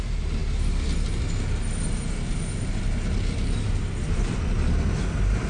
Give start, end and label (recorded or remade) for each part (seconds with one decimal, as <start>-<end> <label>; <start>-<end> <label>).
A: 0.0-5.5 recorded